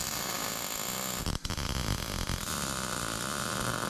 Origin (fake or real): real